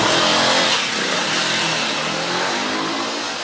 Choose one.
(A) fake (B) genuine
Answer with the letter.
B